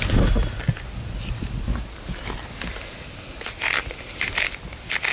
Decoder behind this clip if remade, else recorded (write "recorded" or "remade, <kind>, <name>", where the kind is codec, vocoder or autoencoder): recorded